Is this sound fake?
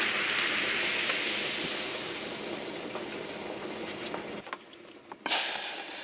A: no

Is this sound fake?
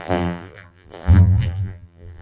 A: yes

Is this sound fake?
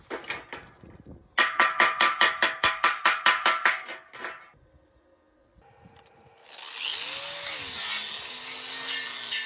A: no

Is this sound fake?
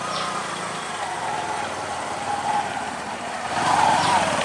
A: yes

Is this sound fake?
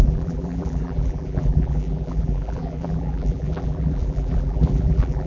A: yes